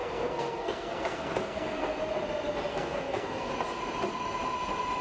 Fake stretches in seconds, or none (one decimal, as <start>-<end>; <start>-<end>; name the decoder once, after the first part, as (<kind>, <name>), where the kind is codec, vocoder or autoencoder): 0.0-2.0 (codec, SNAC); 2.7-3.5